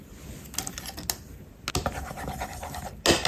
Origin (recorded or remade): recorded